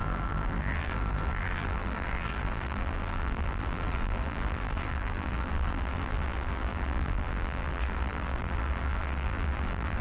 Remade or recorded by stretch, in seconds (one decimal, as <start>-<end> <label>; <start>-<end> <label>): 0.0-10.0 remade